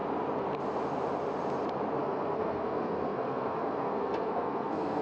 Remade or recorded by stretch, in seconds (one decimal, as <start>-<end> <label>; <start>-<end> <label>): 0.0-2.0 recorded; 2.0-5.0 remade